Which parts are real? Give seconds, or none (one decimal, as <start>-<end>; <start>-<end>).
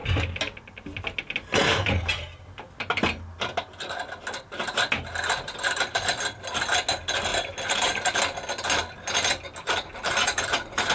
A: 0.0-10.9